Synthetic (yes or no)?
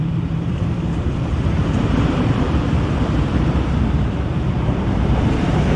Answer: yes